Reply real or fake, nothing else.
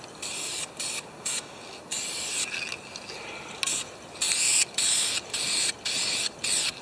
real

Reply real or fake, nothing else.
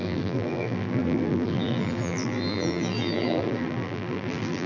fake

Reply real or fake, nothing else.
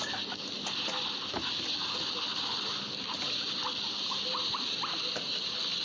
real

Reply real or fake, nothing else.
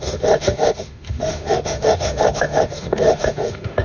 fake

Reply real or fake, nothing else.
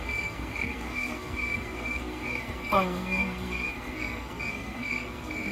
fake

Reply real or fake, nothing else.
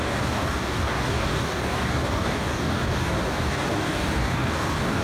fake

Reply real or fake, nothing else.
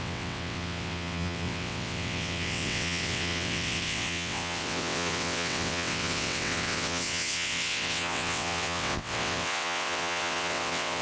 fake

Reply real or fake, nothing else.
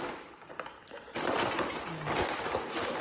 real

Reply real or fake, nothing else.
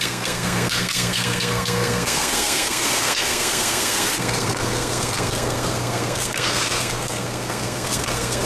fake